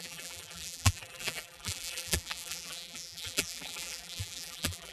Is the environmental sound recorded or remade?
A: remade